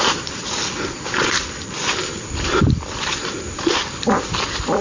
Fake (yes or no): yes